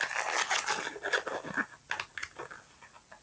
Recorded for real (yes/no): yes